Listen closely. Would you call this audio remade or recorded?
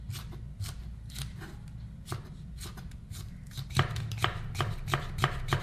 recorded